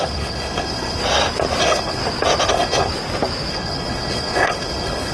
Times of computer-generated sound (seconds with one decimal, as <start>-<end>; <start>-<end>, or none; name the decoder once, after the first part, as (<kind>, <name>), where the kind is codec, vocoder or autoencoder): 0.0-1.0 (codec, HILCodec); 1.6-2.0; 2.5-2.9; 3.5-5.1